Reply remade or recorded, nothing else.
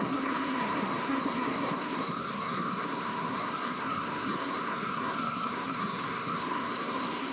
remade